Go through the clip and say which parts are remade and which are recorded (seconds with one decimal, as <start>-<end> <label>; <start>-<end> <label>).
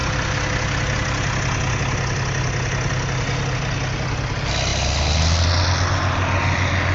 0.0-6.9 recorded